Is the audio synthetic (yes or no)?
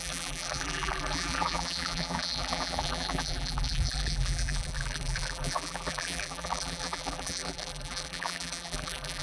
yes